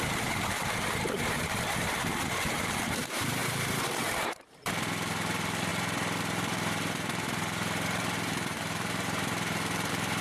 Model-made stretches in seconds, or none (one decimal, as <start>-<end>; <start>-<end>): 0.0-5.7; 6.2-10.2